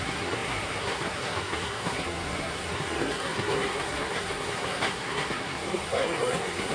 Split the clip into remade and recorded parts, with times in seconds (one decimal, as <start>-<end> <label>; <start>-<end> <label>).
0.0-6.7 remade